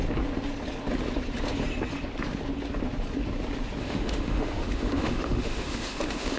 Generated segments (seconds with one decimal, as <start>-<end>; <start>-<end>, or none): 3.8-6.4